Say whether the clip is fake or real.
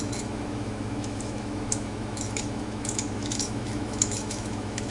fake